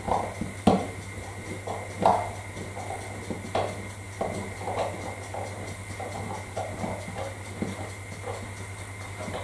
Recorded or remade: recorded